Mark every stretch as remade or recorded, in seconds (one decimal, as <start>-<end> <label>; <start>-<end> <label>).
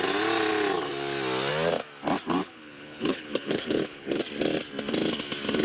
0.0-2.4 recorded; 2.4-4.2 remade; 4.2-5.6 recorded